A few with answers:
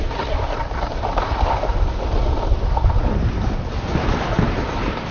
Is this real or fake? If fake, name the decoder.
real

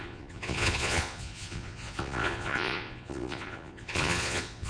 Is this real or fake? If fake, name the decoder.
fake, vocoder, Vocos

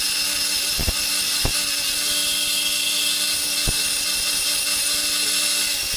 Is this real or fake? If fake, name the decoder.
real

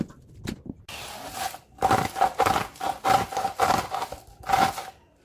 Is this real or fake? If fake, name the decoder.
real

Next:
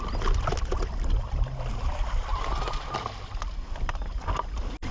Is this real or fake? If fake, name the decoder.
real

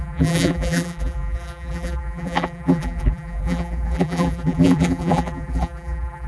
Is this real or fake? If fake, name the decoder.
fake, vocoder, BigVGAN v2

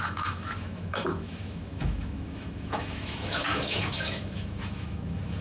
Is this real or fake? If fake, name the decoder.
fake, autoencoder, DAC-VAE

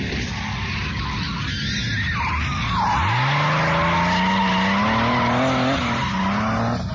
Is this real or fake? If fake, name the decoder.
real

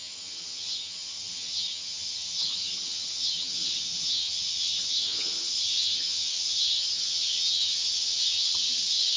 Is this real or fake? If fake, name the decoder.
fake, vocoder, HiFi-GAN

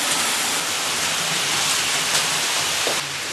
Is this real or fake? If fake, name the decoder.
real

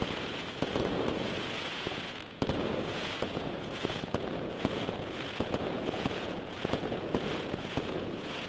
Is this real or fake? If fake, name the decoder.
fake, vocoder, Vocos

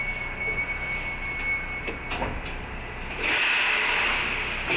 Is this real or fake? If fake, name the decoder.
real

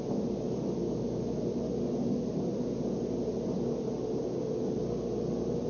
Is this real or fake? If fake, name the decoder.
real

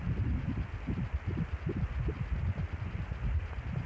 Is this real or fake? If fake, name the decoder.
real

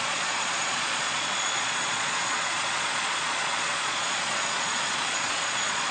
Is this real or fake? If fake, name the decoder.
fake, vocoder, Vocos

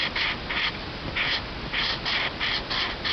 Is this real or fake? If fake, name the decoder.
real